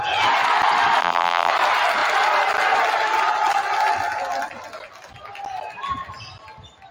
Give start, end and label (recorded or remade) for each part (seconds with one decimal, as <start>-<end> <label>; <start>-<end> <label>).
0.0-1.0 recorded; 1.0-1.5 remade; 1.5-6.9 recorded